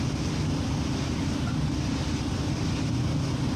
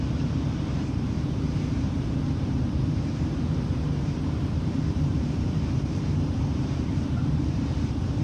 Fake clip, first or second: second